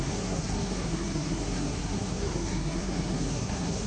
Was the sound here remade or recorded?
remade